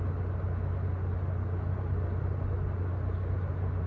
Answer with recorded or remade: recorded